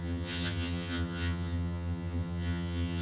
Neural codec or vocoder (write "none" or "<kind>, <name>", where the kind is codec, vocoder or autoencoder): vocoder, HiFi-GAN